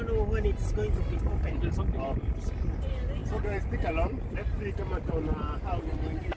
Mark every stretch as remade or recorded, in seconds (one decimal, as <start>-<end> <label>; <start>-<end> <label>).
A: 0.0-6.4 recorded